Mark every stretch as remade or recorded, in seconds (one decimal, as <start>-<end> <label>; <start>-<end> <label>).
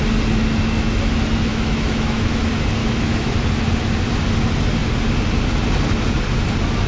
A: 0.0-1.5 recorded; 1.5-2.4 remade; 2.4-2.8 recorded; 2.8-3.4 remade; 3.4-6.9 recorded